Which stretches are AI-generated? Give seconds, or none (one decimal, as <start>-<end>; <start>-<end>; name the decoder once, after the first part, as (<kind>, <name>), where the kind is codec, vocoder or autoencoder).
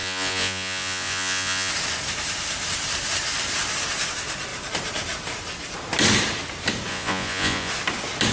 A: 0.0-1.7 (vocoder, Vocos); 6.9-7.7